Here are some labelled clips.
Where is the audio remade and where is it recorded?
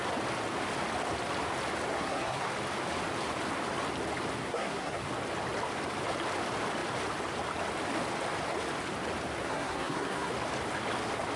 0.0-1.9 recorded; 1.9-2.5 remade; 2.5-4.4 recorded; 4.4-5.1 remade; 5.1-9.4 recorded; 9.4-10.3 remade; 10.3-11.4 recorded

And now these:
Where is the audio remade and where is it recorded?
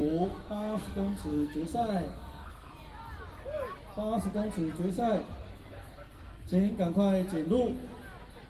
0.0-2.7 remade; 2.7-5.4 recorded; 5.4-6.7 remade; 6.7-8.5 recorded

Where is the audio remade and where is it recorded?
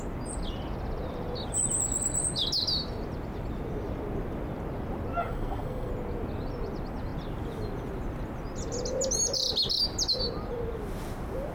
0.0-5.2 recorded; 5.2-5.9 remade; 5.9-11.5 recorded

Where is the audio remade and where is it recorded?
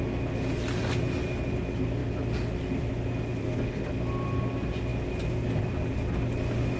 0.0-3.4 recorded; 3.4-3.9 remade; 3.9-6.8 recorded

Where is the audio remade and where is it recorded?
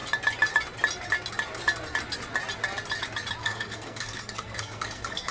0.0-3.4 recorded; 3.4-5.3 remade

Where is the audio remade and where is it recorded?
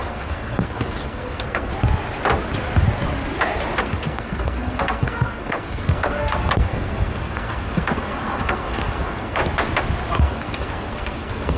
0.0-1.7 remade; 1.7-3.8 recorded; 3.8-9.4 remade; 9.4-10.2 recorded; 10.2-11.6 remade